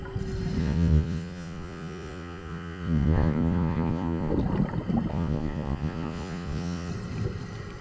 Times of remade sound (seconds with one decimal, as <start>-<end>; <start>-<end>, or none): 0.6-4.3; 5.1-6.9